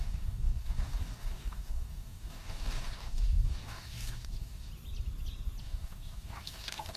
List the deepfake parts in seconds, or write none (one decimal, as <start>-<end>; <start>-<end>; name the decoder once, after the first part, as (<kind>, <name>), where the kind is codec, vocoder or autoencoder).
0.0-4.7 (codec, DAC); 5.6-7.0

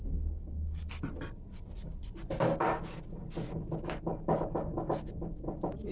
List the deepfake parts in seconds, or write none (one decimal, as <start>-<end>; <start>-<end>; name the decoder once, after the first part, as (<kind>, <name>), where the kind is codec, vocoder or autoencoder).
0.0-0.9 (codec, DAC); 4.1-5.0

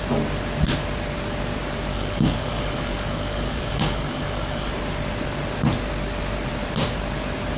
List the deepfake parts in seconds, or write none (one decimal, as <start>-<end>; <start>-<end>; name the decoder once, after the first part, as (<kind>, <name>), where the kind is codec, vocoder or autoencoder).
1.9-4.7 (codec, DAC)

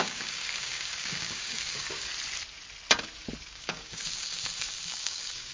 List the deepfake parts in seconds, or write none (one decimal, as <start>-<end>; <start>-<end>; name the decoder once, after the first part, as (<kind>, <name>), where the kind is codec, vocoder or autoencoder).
0.0-2.1 (codec, DAC); 3.5-5.5